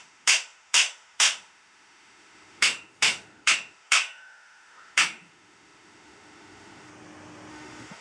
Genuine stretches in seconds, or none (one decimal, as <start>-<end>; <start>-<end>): 6.9-7.5

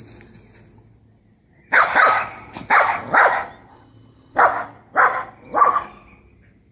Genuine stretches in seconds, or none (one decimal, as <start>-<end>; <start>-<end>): 0.0-3.7; 4.4-6.7